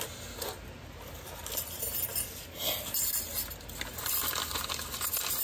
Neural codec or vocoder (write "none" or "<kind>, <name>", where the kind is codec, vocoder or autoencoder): none